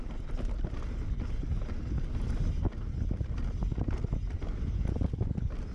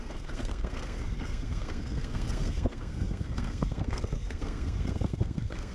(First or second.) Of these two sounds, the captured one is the first